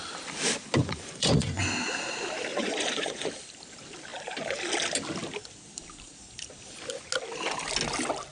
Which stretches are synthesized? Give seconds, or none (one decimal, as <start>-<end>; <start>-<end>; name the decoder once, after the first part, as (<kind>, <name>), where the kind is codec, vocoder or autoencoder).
0.8-1.6 (vocoder, Vocos); 2.5-3.3